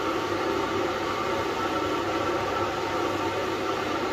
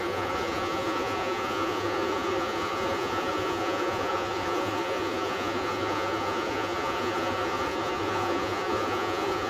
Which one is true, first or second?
first